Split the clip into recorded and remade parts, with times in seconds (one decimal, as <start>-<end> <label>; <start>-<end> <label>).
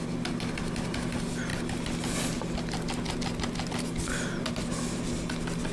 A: 0.0-5.7 recorded